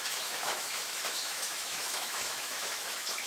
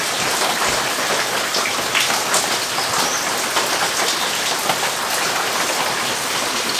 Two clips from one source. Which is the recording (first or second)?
second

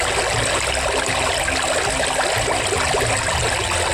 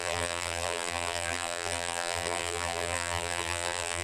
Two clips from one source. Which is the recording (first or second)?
first